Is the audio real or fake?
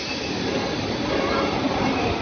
real